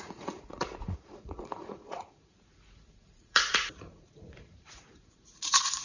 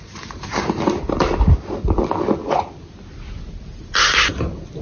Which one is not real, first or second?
first